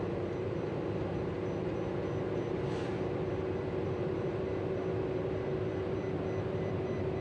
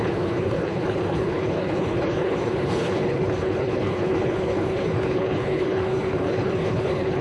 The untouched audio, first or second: first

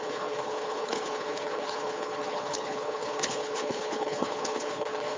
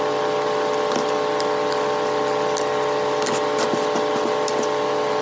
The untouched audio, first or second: second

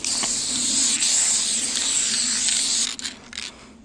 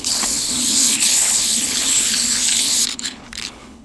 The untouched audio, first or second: first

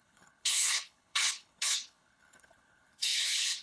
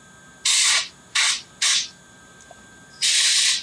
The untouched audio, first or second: second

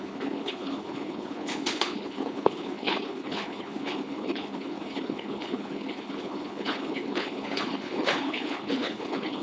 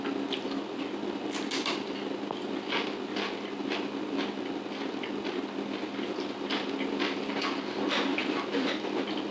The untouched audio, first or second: second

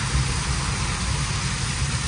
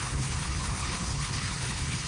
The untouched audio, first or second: first